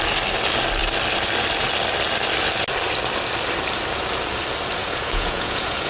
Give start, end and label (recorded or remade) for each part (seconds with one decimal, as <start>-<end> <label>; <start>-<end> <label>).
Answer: 0.0-4.8 recorded; 4.8-5.9 remade

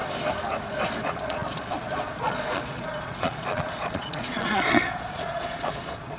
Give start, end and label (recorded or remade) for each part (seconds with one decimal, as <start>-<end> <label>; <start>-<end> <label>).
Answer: 0.0-1.0 recorded; 1.0-6.2 remade

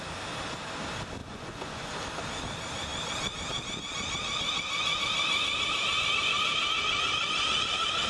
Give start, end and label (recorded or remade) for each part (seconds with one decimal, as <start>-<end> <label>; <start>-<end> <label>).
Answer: 0.0-1.2 recorded; 1.2-1.9 remade; 1.9-8.1 recorded

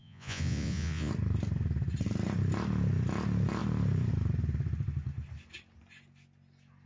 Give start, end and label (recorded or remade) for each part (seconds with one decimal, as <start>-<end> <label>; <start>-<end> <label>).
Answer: 0.0-1.1 remade; 1.1-6.9 recorded